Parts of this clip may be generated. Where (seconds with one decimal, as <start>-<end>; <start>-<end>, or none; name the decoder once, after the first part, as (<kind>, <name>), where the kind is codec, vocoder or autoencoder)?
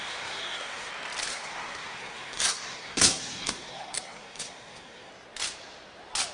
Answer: 0.0-0.9 (codec, SNAC); 1.3-5.1